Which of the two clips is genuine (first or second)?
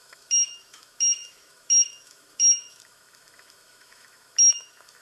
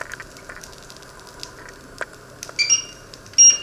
second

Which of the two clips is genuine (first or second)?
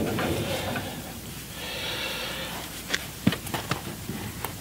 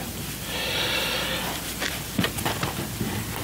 second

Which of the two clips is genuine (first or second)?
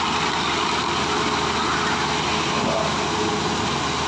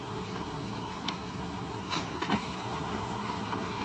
first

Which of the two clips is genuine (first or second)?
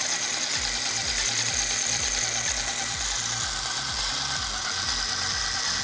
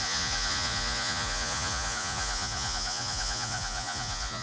first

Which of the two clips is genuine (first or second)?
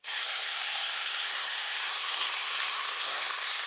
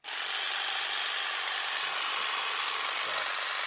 second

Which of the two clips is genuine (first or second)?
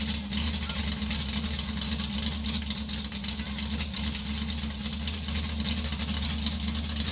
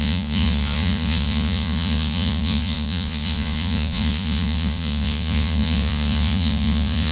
first